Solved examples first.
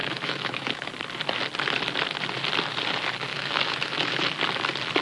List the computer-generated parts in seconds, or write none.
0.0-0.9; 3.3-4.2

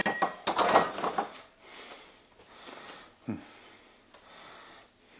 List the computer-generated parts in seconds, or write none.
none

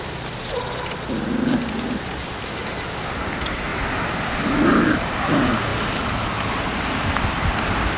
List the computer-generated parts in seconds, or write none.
none

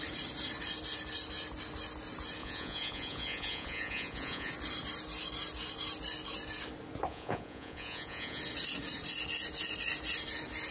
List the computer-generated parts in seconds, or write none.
2.4-4.5; 7.1-8.4

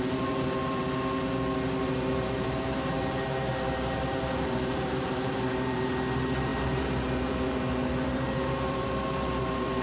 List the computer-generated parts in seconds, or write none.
0.0-0.8; 1.8-9.8

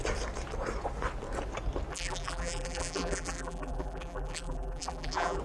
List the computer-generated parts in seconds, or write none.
1.9-5.4

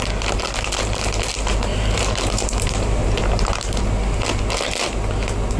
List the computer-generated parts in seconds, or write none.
1.7-3.8